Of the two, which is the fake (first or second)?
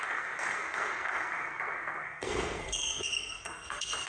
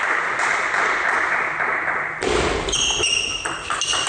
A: first